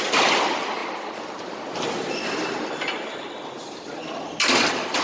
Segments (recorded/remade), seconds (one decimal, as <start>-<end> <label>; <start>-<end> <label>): 0.0-5.0 recorded